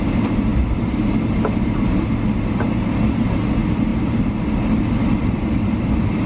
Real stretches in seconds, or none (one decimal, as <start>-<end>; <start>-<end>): 0.0-3.9; 4.4-6.3